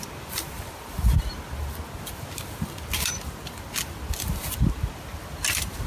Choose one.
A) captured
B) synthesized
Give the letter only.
A